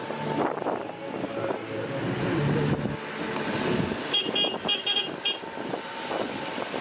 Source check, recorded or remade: recorded